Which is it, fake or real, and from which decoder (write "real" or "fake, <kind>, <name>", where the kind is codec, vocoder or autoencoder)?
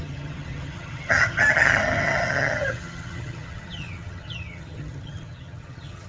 fake, vocoder, HiFi-GAN